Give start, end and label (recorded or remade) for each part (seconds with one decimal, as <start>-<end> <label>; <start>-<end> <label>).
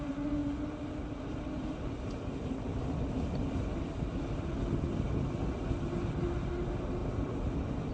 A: 0.0-7.9 recorded